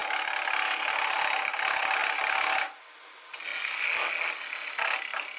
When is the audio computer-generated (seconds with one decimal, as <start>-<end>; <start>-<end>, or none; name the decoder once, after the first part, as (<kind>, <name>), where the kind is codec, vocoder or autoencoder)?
none